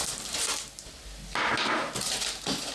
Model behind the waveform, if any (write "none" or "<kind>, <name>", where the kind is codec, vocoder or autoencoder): none